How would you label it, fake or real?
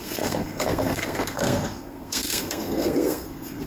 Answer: fake